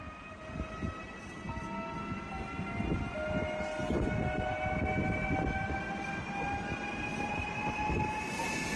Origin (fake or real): real